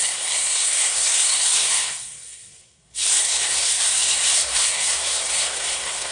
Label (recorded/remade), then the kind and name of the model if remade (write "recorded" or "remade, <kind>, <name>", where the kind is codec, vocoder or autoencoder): remade, codec, SNAC